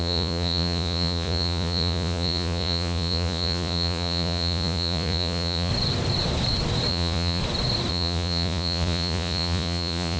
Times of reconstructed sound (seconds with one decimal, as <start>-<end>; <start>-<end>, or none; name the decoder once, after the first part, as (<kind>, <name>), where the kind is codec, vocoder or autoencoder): 0.0-5.7 (vocoder, Vocos); 6.9-7.4; 7.9-10.2